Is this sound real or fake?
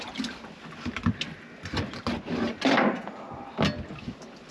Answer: real